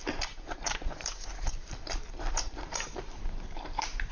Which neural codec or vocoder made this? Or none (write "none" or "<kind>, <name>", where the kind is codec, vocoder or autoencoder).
vocoder, BigVGAN v2